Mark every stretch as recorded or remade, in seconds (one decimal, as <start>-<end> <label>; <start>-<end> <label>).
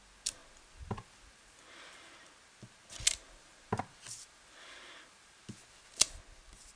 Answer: 0.0-6.8 recorded